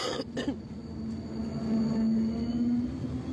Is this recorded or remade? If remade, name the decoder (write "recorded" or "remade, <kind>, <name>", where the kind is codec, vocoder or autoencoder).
recorded